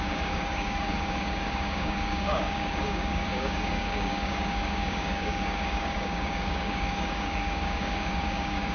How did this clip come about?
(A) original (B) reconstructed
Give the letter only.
B